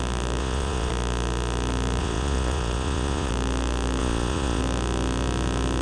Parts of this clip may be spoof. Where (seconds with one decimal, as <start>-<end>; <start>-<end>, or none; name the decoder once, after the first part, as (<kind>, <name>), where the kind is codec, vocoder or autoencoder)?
0.4-0.9 (vocoder, Vocos); 2.0-3.3; 4.0-4.6